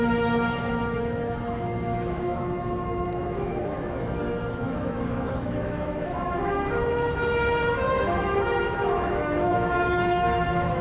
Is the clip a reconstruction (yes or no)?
yes